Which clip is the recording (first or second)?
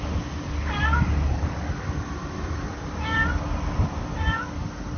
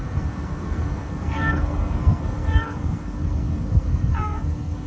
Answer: first